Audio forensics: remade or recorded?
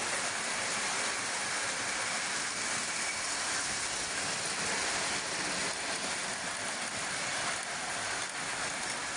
recorded